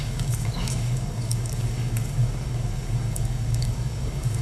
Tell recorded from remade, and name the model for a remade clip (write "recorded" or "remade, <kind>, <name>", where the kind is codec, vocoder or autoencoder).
remade, codec, DAC